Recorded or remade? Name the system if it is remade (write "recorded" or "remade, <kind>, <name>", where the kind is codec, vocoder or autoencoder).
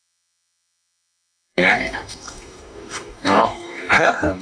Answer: remade, codec, DAC